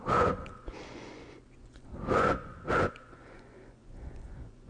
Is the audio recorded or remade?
remade